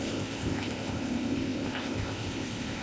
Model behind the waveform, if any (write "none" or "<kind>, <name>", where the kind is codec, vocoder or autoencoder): codec, ZipCodec